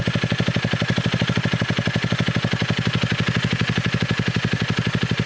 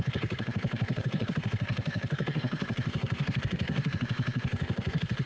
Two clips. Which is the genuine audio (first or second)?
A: first